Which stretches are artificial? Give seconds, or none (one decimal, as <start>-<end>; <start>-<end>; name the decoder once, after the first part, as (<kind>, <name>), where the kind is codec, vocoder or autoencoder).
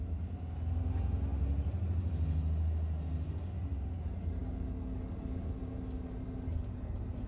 none